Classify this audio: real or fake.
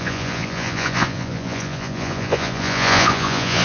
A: fake